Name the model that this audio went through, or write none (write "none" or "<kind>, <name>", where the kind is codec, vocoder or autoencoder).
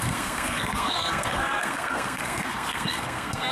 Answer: codec, SNAC